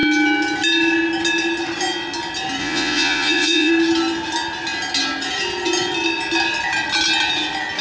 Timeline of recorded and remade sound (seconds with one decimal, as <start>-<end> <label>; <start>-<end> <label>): 0.0-2.6 recorded; 2.6-3.7 remade; 3.7-7.8 recorded